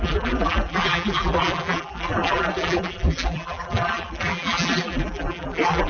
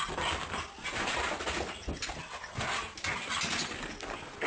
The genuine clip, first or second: second